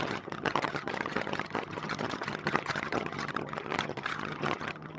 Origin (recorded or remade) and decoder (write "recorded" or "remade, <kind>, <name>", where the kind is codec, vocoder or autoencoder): remade, vocoder, HiFi-GAN